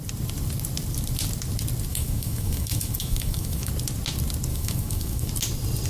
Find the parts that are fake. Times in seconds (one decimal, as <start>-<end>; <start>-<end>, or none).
1.9-3.7; 4.5-5.3